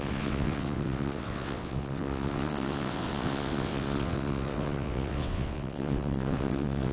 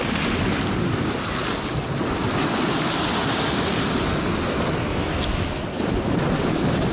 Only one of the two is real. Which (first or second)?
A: second